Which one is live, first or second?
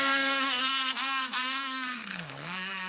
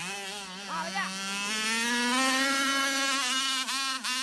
second